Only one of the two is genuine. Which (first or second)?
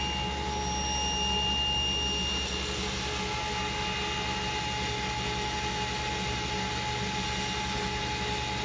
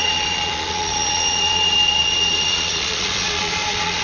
first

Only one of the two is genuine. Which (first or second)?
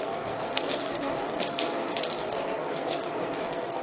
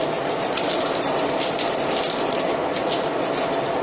second